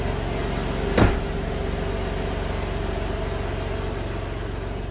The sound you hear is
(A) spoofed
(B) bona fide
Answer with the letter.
B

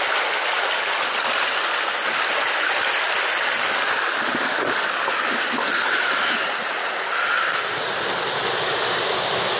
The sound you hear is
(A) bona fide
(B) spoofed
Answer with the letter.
A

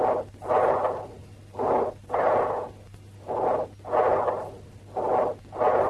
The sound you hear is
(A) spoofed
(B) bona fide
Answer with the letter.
B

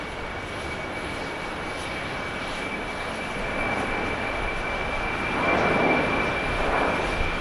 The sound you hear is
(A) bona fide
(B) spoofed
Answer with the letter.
A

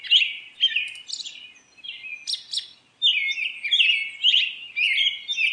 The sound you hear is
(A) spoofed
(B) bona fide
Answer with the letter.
B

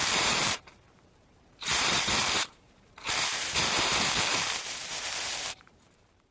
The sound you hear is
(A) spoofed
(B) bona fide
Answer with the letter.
A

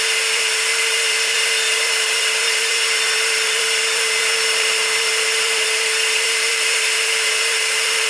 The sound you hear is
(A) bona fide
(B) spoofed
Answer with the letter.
B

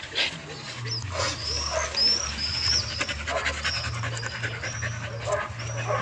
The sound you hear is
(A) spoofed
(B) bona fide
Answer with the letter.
B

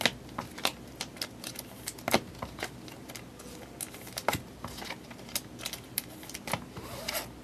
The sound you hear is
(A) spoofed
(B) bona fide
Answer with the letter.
B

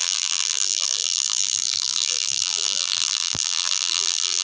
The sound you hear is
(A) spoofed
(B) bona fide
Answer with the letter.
A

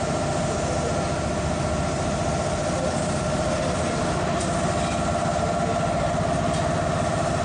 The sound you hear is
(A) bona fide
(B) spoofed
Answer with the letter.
A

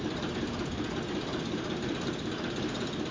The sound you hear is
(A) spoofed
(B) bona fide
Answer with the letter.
A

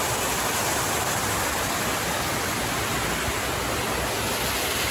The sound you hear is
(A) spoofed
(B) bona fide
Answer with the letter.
B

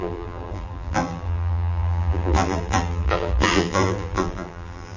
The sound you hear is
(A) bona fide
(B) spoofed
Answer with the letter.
B